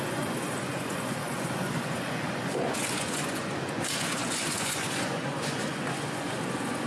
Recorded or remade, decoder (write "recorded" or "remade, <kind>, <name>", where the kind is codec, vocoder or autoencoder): remade, vocoder, Vocos